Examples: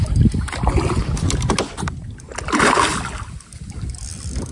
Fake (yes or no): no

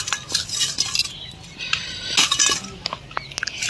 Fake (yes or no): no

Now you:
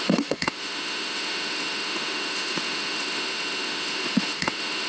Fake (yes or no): yes